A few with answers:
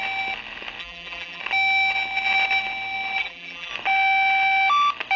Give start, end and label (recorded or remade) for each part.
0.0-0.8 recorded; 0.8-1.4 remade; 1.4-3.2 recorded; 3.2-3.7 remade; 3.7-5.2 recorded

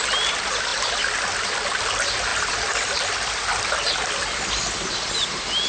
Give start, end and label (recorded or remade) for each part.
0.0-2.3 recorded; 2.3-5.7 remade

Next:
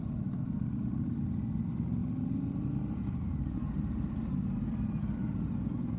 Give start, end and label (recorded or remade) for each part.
0.0-2.0 recorded; 2.0-5.6 remade; 5.6-6.0 recorded